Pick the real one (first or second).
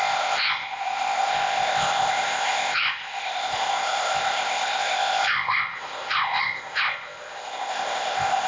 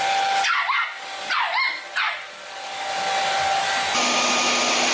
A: second